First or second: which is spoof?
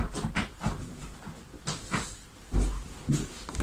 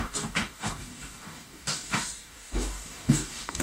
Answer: second